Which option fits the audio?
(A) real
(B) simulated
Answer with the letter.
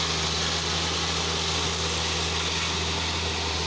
A